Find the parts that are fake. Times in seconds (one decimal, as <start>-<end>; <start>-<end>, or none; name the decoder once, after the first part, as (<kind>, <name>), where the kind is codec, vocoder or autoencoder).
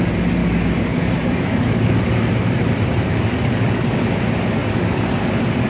0.4-2.3 (codec, DAC); 3.1-4.0; 4.6-5.7